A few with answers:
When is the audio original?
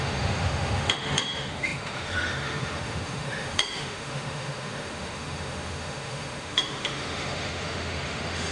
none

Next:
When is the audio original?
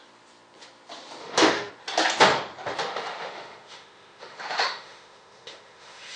0.0-1.2; 1.7-2.8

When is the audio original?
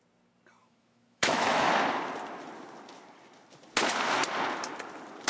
0.0-0.6; 1.7-5.3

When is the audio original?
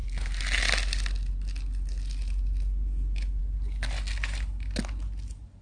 0.0-5.6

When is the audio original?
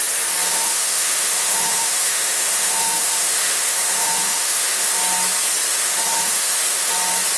0.0-0.5; 4.9-5.7; 6.9-7.4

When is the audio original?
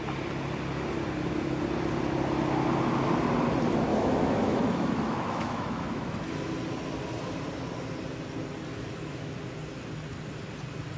0.0-3.9; 6.5-8.7; 9.3-11.0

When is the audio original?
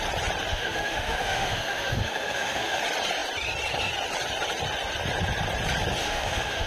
0.0-0.5; 2.8-6.0